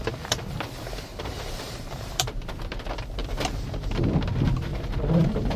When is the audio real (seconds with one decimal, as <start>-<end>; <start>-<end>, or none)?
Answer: 0.6-1.1; 2.5-3.2; 4.0-4.7